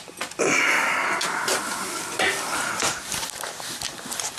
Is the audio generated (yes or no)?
no